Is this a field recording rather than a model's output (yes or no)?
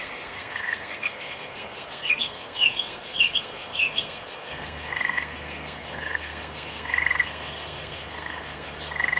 no